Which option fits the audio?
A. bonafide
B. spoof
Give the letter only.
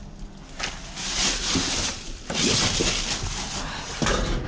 A